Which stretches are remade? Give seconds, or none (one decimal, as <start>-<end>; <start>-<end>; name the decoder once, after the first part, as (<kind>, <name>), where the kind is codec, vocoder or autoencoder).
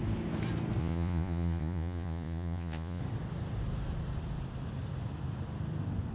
0.8-3.0 (vocoder, Vocos)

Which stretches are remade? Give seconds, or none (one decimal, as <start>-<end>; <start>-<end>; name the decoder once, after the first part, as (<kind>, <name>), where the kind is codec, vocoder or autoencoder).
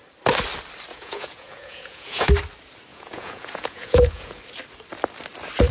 0.9-2.3 (vocoder, Vocos); 2.9-4.4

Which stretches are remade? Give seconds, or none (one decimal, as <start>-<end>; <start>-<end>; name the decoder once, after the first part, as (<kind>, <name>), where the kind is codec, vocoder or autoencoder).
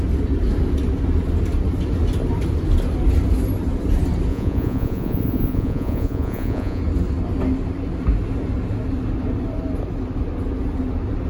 4.3-6.8 (vocoder, Vocos)